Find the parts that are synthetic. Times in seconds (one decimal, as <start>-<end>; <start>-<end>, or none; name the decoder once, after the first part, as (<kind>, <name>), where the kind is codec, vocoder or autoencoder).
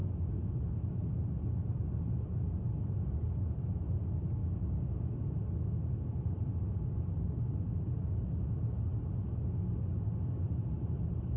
2.0-4.4 (vocoder, BigVGAN v2); 5.9-11.4